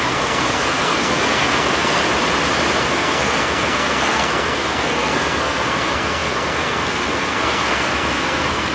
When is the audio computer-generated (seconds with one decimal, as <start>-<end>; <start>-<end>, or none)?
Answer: 0.0-2.0; 2.8-8.7